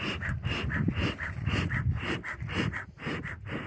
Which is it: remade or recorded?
recorded